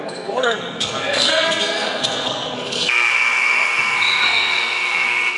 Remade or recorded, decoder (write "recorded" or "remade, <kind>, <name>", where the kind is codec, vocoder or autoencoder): remade, codec, SNAC